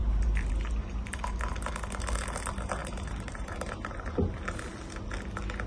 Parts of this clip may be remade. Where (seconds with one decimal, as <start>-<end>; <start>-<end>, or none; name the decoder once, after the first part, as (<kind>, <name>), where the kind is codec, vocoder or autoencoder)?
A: 0.0-1.7 (vocoder, BigVGAN v2); 2.8-4.6